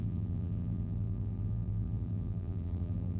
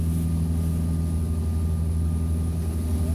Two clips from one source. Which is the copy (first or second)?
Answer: first